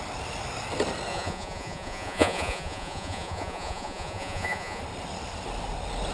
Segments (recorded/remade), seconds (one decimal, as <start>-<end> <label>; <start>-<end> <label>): 0.0-1.1 recorded; 1.1-4.8 remade; 4.8-6.1 recorded